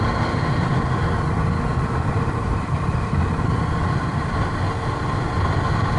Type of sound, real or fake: real